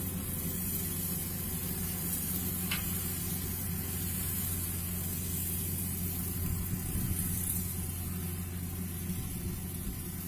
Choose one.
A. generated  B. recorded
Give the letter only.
B